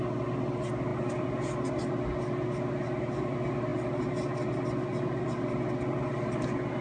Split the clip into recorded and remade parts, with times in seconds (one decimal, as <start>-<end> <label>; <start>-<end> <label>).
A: 0.0-6.8 recorded